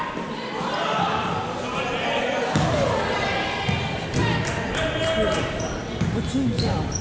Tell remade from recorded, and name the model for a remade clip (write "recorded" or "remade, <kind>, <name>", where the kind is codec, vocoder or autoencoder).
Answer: recorded